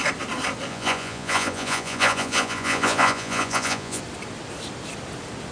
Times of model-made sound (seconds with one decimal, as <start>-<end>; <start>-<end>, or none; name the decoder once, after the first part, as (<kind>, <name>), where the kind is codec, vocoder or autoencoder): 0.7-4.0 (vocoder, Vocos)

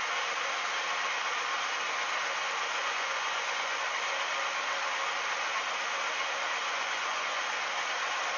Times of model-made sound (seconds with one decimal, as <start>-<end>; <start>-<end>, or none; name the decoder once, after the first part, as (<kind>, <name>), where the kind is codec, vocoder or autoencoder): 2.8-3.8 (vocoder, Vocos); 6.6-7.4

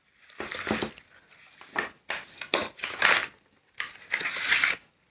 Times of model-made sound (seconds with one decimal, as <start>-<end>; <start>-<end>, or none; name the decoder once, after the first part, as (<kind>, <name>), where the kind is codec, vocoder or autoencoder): none

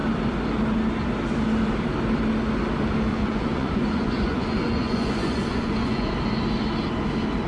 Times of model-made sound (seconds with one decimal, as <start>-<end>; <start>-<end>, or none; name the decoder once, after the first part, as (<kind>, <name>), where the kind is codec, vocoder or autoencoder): 3.1-6.1 (vocoder, Vocos)

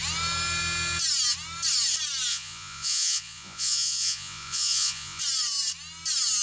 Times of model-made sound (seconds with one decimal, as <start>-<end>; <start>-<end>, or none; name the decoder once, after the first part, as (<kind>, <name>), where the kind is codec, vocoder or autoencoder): 2.3-5.2 (vocoder, Vocos)

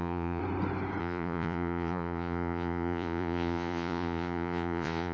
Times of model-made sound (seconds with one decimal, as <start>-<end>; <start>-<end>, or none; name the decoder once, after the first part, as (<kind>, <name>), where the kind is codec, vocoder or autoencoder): 0.0-0.4 (vocoder, Vocos); 1.0-5.1

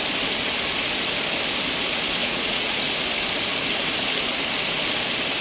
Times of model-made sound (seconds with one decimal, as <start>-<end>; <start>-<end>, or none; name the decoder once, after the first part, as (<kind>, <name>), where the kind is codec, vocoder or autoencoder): 2.2-2.8 (vocoder, Vocos)

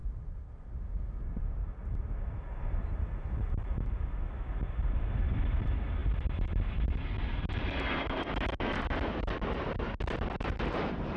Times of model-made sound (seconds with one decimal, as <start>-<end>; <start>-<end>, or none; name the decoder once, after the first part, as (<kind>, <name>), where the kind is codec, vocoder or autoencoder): none